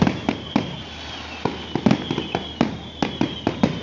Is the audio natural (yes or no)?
yes